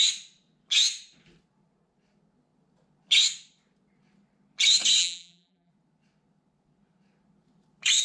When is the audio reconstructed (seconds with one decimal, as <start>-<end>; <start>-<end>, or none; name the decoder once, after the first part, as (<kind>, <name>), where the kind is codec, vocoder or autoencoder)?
5.0-5.7 (vocoder, BigVGAN v2)